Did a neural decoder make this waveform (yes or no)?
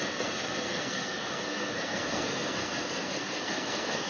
yes